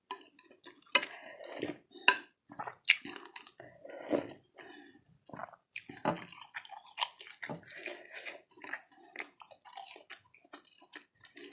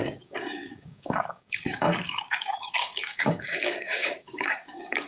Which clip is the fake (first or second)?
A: second